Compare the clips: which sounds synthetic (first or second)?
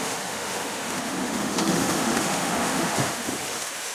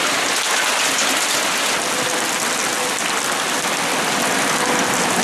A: first